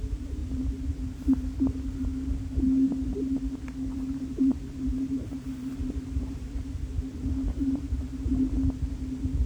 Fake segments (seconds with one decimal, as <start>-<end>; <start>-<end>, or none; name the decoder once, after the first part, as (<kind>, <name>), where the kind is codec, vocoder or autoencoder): 0.0-0.4 (vocoder, BigVGAN v2); 3.9-8.3